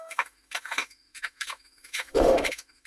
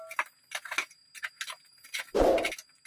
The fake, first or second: first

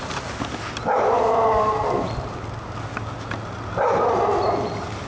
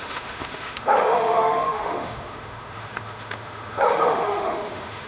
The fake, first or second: second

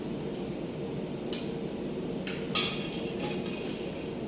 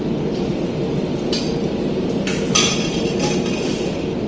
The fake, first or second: second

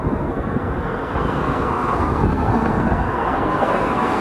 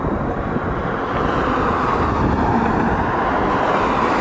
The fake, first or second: first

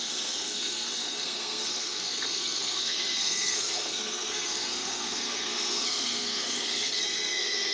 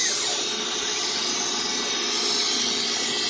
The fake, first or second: first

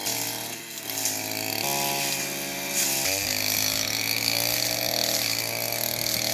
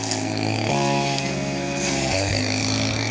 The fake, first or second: second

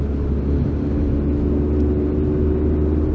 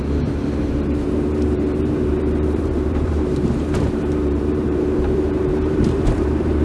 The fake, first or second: second